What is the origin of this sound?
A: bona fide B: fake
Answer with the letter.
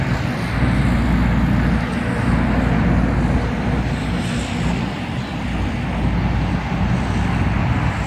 A